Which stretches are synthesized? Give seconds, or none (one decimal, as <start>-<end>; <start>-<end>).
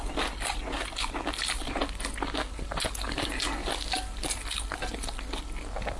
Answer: none